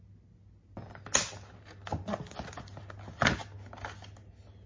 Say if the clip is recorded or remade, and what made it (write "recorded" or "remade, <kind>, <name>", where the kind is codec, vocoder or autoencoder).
recorded